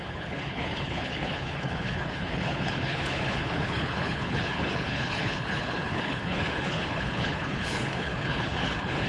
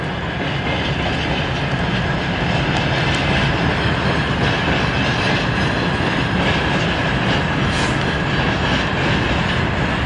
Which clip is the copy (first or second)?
first